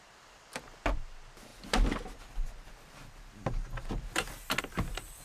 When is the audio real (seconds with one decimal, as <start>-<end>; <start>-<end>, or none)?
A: 0.0-5.2